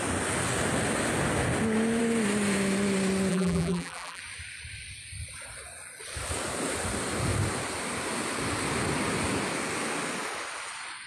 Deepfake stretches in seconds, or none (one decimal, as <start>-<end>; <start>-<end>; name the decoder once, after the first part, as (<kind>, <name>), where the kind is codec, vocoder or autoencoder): 3.3-4.2 (vocoder, BigVGAN v2)